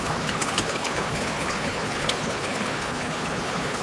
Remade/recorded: remade